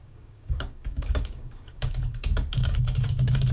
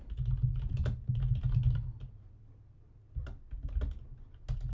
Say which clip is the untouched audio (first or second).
second